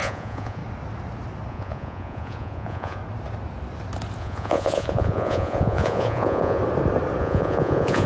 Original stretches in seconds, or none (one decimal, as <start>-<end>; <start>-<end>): 0.6-1.5; 3.0-4.2; 6.6-7.2